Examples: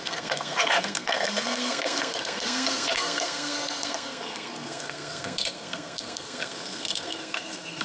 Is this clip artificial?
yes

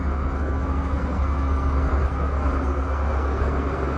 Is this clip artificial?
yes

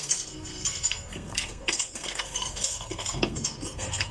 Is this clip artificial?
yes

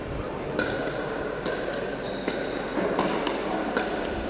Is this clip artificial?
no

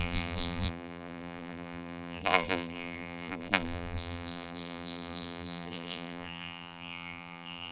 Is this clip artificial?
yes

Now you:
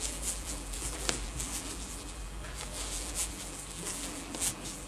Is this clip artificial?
yes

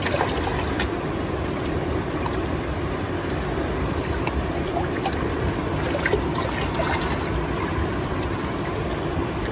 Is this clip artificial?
no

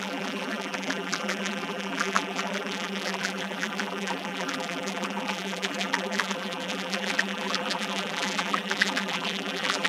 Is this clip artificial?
yes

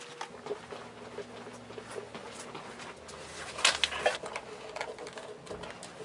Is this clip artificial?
no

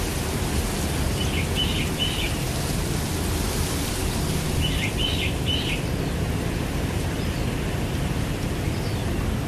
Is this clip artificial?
no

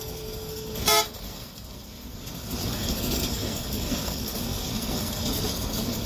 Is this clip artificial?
yes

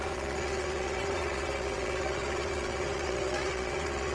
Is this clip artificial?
yes